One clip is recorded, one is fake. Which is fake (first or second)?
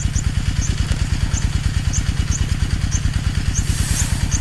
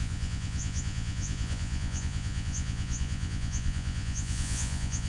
second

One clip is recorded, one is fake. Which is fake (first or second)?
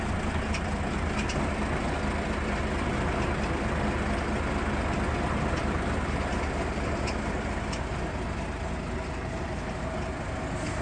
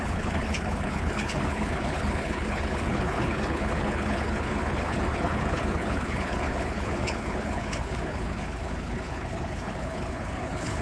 second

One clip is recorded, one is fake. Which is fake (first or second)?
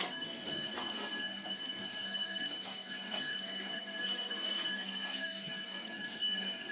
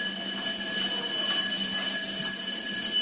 first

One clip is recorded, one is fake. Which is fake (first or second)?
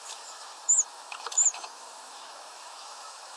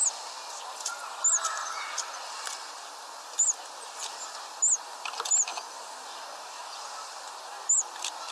first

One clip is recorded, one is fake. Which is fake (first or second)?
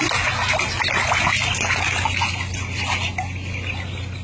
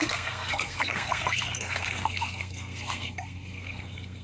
second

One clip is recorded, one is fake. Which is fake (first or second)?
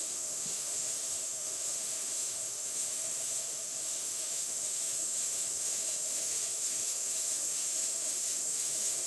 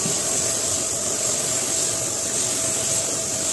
first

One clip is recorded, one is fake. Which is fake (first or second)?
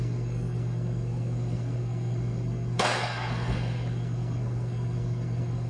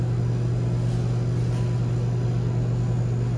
first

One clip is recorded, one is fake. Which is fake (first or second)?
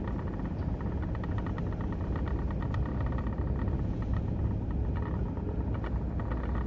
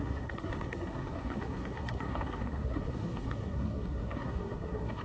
second